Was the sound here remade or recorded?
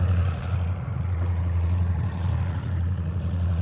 remade